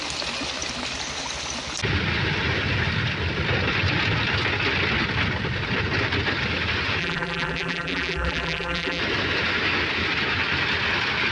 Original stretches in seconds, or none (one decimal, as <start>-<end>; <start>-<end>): 0.0-7.0; 9.0-11.3